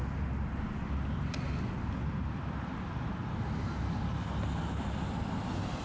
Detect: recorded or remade recorded